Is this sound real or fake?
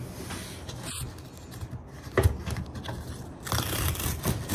real